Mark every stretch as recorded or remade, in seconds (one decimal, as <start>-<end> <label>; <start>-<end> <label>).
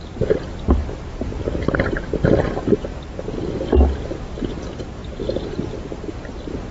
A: 0.0-2.9 remade; 2.9-4.1 recorded; 4.1-6.7 remade